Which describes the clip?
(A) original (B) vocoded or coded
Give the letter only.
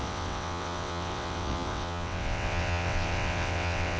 B